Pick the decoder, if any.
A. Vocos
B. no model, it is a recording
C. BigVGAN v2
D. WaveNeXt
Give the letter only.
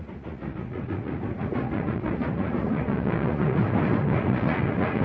A